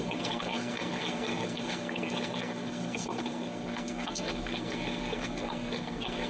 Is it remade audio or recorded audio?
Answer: remade